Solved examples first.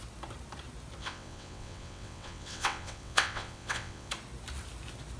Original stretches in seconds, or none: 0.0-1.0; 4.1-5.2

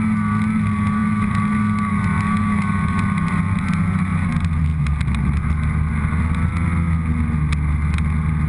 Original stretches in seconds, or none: 0.0-8.5

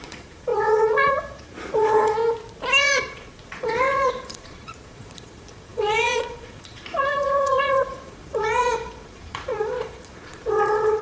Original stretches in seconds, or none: 2.2-2.8